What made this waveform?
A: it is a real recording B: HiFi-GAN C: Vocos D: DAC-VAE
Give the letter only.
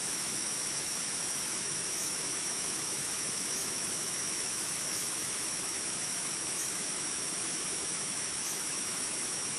D